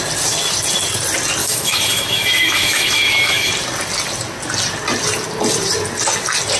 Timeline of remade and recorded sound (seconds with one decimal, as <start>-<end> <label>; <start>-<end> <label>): 0.0-1.4 recorded; 1.4-3.5 remade; 3.5-6.6 recorded

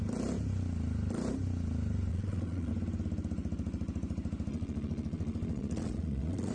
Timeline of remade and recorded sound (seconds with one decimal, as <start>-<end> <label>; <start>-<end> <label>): 0.0-2.1 recorded; 2.1-2.7 remade; 2.7-4.5 recorded; 4.5-6.5 remade

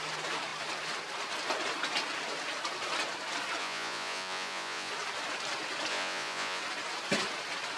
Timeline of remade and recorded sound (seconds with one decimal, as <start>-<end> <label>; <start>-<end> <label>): 0.0-3.6 recorded; 3.6-4.9 remade; 4.9-5.9 recorded; 5.9-6.6 remade; 6.6-7.8 recorded

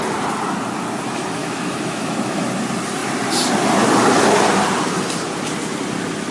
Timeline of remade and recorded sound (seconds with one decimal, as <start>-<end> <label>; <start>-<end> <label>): 0.0-1.4 recorded; 1.4-2.5 remade; 2.5-6.3 recorded

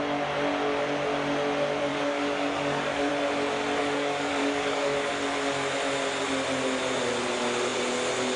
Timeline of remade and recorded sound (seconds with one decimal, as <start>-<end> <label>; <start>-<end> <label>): 0.0-1.9 recorded; 1.9-3.1 remade; 3.1-3.8 recorded; 3.8-5.1 remade; 5.1-8.4 recorded

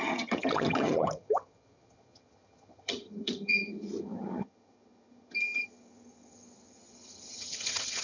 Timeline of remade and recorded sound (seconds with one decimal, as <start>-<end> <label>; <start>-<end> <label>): 0.0-8.0 remade